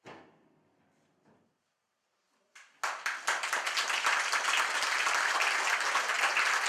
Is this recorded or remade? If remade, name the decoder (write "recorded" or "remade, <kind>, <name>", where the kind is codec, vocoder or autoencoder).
recorded